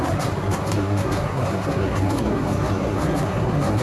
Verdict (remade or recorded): remade